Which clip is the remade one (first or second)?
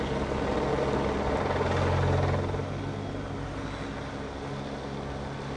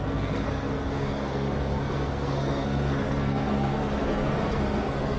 second